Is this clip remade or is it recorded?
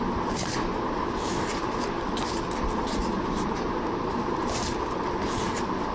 recorded